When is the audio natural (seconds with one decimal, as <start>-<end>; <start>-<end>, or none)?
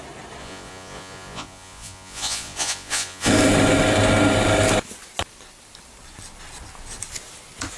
0.0-0.4; 3.3-7.8